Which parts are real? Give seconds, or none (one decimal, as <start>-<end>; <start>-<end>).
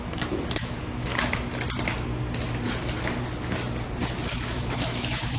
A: 1.1-4.3